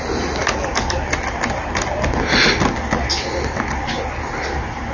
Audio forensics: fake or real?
real